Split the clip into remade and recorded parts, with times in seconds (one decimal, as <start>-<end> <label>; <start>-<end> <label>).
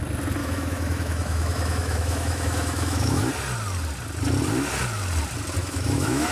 0.0-0.4 recorded; 0.4-3.3 remade; 3.3-5.6 recorded; 5.6-6.3 remade